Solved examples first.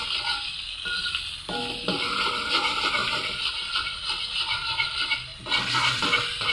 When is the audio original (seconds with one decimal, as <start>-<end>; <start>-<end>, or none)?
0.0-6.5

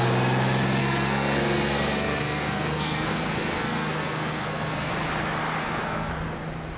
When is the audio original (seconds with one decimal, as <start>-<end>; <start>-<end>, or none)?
0.0-0.8; 4.9-5.6; 6.1-6.8

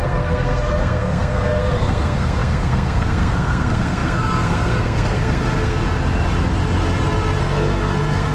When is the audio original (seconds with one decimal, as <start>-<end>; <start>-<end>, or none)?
5.8-7.4